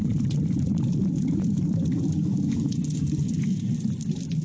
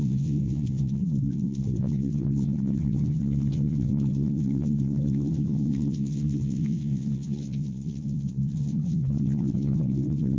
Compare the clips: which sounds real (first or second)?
first